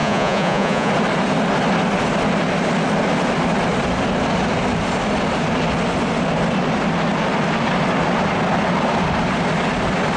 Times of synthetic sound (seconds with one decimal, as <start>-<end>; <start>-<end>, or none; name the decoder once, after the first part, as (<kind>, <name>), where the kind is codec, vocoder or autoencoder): 0.0-0.9 (vocoder, Vocos)